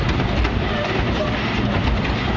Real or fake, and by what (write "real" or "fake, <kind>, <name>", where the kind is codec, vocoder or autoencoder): real